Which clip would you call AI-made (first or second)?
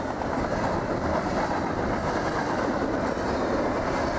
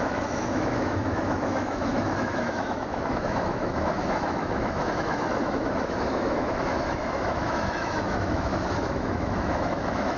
second